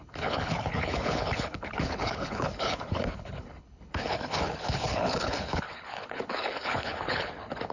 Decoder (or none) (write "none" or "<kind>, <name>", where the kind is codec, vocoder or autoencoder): codec, HILCodec